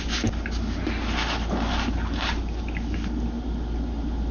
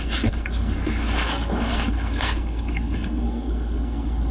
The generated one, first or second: second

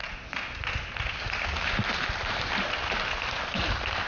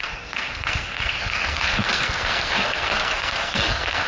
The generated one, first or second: second